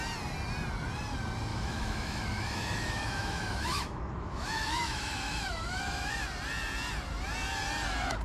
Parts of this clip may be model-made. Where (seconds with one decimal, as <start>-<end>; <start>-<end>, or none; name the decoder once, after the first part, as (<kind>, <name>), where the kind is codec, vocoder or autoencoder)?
1.5-6.1 (autoencoder, DAC-VAE)